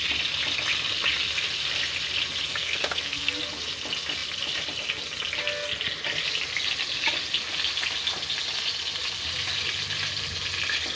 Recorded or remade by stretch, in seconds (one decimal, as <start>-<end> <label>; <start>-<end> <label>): 0.0-2.5 recorded; 2.5-3.4 remade; 3.4-11.0 recorded